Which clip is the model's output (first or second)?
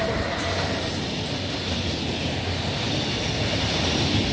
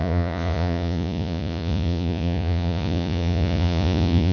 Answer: second